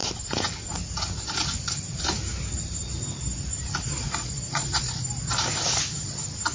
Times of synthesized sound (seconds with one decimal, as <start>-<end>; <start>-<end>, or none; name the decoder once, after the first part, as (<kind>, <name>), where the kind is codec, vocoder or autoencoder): 3.8-4.9 (vocoder, Vocos)